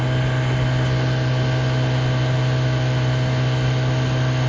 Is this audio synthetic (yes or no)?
no